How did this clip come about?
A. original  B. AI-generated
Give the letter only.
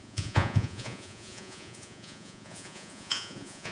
B